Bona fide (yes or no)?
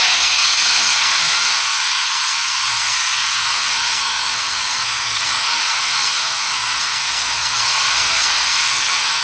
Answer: no